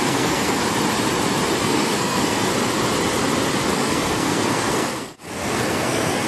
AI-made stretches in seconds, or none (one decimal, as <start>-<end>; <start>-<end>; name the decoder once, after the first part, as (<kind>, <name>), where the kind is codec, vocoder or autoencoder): 0.0-0.6 (codec, SNAC); 1.6-2.5; 3.7-6.3